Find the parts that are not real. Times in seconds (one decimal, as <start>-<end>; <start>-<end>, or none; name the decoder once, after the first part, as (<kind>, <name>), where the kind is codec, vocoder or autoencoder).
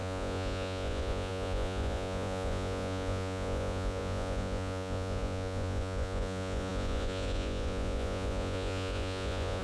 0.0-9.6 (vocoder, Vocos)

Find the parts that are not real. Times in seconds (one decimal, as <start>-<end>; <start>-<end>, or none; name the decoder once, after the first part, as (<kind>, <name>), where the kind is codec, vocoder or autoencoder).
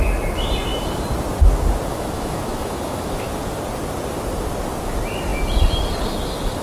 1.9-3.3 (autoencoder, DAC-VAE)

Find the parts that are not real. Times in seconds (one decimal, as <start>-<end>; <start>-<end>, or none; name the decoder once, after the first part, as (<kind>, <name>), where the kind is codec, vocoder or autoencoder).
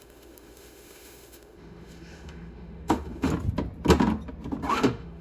0.0-3.3 (autoencoder, DAC-VAE); 4.7-5.2